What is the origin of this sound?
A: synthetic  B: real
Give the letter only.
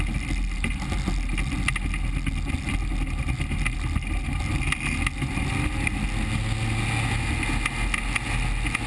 B